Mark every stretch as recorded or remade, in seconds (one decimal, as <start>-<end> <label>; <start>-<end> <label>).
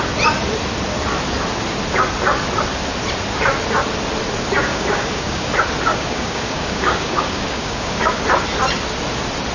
0.0-4.7 recorded; 4.7-5.5 remade; 5.5-5.9 recorded; 5.9-8.2 remade; 8.2-9.5 recorded